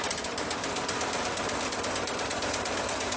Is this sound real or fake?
fake